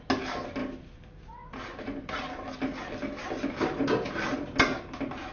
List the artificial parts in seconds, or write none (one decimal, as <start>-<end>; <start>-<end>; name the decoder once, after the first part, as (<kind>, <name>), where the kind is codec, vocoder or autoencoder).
none

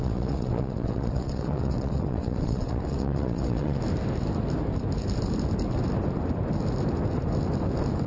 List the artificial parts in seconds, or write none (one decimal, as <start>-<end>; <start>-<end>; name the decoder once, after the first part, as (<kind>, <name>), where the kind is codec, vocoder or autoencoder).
0.0-3.8 (vocoder, WaveNeXt)

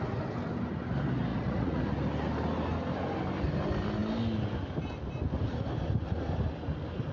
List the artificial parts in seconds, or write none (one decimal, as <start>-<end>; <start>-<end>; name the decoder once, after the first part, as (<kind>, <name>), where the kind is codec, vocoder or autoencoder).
1.3-1.8 (vocoder, Vocos)